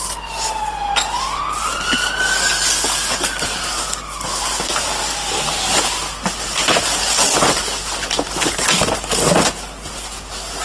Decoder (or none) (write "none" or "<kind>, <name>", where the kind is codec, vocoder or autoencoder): none